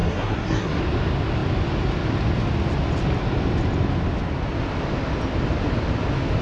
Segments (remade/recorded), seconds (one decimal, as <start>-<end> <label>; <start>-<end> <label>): 0.0-0.8 remade; 0.8-6.4 recorded